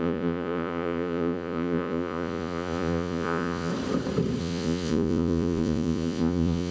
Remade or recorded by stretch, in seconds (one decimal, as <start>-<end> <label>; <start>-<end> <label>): 0.0-3.7 remade; 3.7-4.4 recorded; 4.4-6.7 remade